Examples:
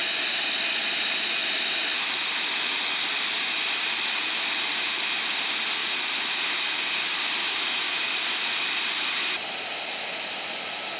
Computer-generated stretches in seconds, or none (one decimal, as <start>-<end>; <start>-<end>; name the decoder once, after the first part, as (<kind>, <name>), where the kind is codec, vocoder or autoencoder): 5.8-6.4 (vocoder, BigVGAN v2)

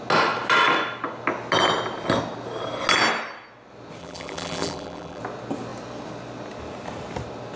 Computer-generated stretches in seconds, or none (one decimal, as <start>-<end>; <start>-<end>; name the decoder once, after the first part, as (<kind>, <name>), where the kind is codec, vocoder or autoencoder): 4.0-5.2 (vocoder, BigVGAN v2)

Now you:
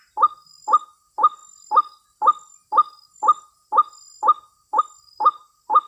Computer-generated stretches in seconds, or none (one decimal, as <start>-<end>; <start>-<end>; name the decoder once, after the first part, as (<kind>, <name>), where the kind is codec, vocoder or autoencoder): none

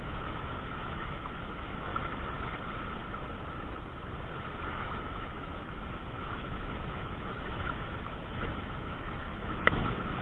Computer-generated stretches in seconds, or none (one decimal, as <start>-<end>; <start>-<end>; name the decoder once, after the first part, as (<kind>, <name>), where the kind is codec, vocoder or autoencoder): 0.0-1.9 (autoencoder, DAC-VAE); 4.7-10.2